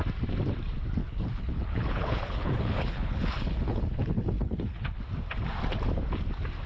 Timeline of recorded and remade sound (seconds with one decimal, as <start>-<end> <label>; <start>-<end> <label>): 0.0-1.0 recorded; 1.0-5.0 remade; 5.0-6.7 recorded